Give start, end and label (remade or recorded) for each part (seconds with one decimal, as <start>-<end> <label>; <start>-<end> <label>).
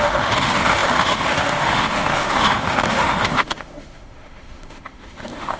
0.0-5.6 remade